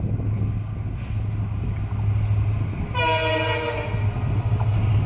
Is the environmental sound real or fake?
real